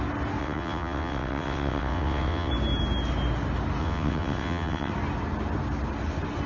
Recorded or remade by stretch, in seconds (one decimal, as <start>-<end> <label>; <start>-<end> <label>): 0.0-0.4 recorded; 0.4-2.5 remade; 2.5-3.8 recorded; 3.8-4.9 remade; 4.9-6.5 recorded